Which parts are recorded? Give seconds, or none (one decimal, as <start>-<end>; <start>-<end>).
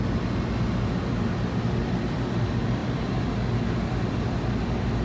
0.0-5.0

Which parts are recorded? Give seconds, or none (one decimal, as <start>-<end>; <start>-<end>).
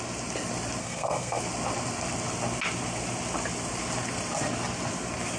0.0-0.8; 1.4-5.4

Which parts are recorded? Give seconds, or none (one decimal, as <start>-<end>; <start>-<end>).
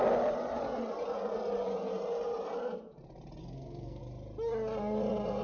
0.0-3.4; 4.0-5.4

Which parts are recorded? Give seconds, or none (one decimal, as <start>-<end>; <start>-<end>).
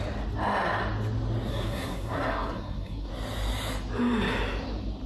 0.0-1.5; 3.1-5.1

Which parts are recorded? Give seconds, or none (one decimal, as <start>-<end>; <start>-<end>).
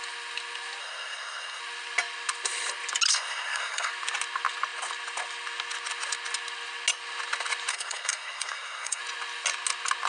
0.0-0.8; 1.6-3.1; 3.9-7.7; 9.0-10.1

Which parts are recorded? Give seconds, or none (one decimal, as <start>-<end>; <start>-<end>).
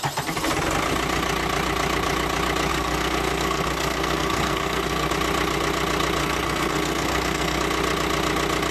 0.0-2.7; 5.1-6.2; 7.6-8.7